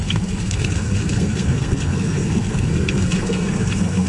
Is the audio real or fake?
fake